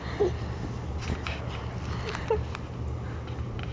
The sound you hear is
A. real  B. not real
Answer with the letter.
A